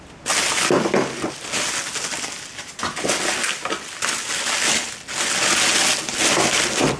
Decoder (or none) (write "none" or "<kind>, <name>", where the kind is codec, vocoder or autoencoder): none